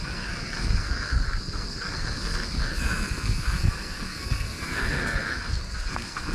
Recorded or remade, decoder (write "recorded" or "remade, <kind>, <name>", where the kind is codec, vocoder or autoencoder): remade, codec, SNAC